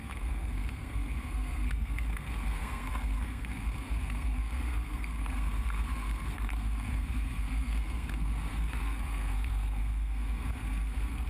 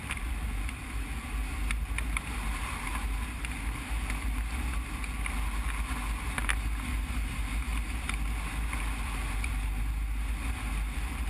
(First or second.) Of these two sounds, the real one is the second